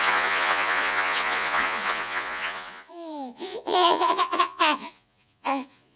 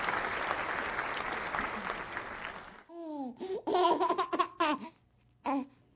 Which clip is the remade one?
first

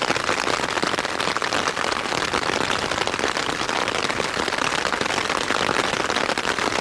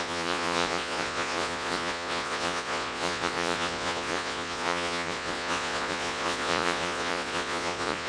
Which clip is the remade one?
second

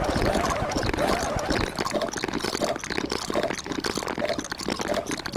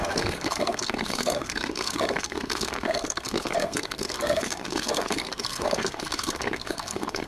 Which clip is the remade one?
second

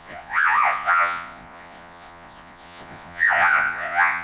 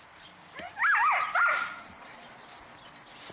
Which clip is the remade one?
first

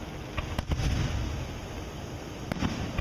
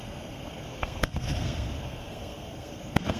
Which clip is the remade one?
second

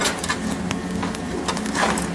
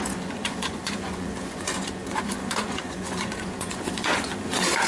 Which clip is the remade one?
second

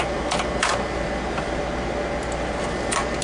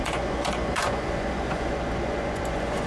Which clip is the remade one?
second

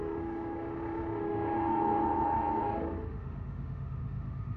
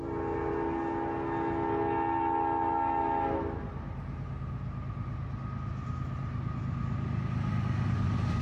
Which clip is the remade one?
first